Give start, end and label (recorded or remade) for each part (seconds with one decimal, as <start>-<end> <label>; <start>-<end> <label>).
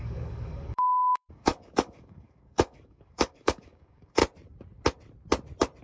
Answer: 0.0-4.2 remade; 4.2-5.8 recorded